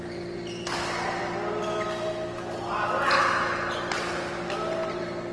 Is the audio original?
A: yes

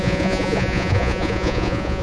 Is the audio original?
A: no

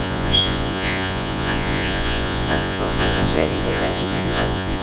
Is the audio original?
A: no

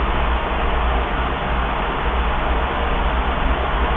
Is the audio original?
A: yes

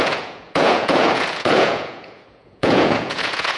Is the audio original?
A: no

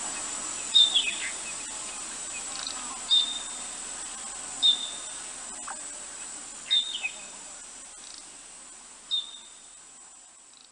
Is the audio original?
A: yes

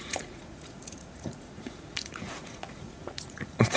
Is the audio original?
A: no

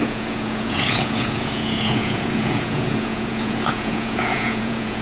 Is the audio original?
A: no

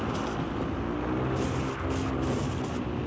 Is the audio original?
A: yes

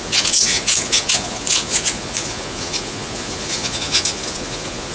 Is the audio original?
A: no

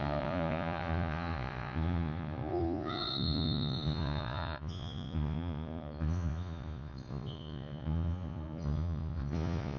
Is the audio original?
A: no